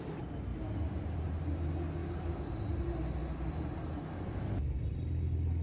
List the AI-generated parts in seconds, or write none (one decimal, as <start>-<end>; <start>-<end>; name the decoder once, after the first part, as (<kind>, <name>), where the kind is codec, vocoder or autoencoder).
none